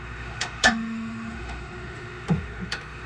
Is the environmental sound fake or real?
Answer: fake